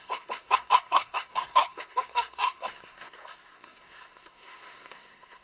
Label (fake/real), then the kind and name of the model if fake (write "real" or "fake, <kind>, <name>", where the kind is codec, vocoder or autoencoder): fake, codec, SNAC